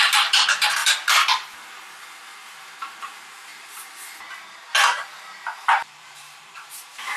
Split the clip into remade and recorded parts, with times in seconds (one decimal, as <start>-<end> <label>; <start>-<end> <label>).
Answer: 0.0-0.8 remade; 0.8-3.0 recorded; 3.0-3.5 remade; 3.5-5.6 recorded; 5.6-7.2 remade